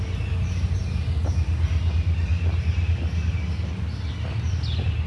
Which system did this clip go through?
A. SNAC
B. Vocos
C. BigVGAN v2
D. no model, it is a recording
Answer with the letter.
D